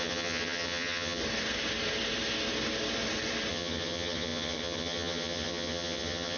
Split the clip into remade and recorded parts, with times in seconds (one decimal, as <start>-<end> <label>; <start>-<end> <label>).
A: 0.0-1.2 remade; 1.2-3.5 recorded; 3.5-6.4 remade